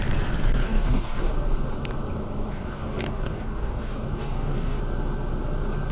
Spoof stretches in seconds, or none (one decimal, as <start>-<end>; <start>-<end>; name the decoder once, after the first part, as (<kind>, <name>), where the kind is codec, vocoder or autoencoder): 0.6-1.3 (codec, DAC); 2.5-4.8